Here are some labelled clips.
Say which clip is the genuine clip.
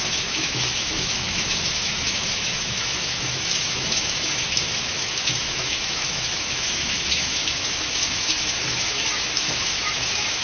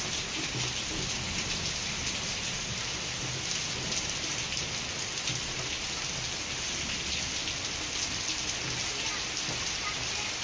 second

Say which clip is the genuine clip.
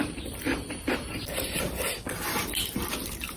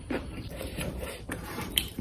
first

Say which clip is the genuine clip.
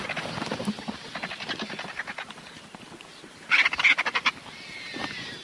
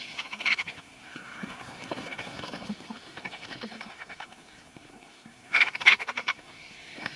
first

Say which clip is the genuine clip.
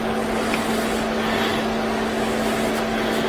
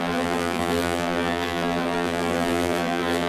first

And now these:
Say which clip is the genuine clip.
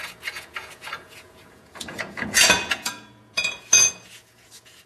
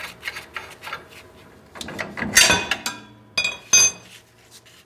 second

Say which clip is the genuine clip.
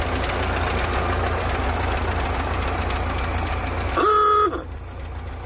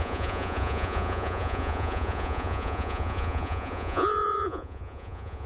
first